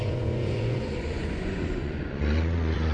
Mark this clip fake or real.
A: fake